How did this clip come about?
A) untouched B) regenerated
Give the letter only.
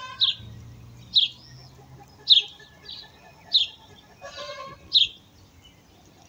A